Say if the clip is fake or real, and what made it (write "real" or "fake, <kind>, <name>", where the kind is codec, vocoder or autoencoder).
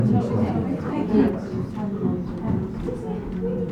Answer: real